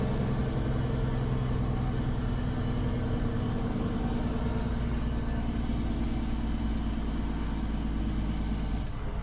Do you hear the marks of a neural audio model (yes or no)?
no